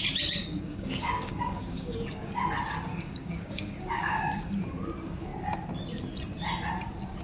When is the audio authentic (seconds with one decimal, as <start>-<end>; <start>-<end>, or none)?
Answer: 0.0-0.4; 2.3-2.9; 4.4-7.2